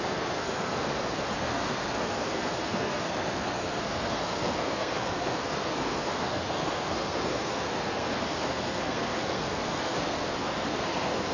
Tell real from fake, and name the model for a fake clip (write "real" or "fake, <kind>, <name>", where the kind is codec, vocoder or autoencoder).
fake, codec, SNAC